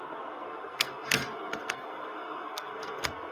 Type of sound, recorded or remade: remade